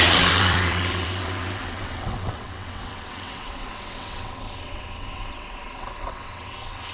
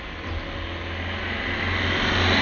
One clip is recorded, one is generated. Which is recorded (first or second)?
second